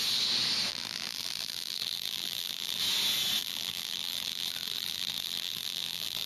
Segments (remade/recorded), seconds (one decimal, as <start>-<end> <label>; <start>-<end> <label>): 0.0-0.7 recorded; 0.7-2.8 remade; 2.8-3.4 recorded; 3.4-6.3 remade